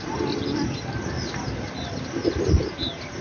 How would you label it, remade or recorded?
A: recorded